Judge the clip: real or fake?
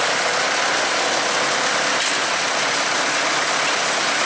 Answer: real